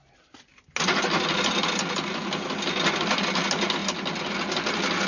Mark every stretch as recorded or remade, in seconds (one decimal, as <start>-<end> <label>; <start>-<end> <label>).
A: 0.0-5.1 recorded

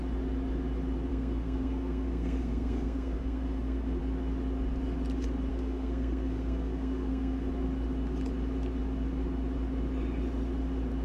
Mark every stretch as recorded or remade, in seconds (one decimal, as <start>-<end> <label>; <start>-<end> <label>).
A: 0.0-1.1 recorded; 1.1-4.0 remade; 4.0-5.5 recorded; 5.5-7.5 remade; 7.5-11.0 recorded